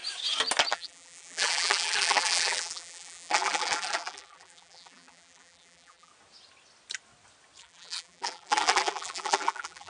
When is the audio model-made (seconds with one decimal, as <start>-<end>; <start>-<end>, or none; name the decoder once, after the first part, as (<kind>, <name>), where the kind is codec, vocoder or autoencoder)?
0.7-6.1 (vocoder, BigVGAN v2); 7.6-9.9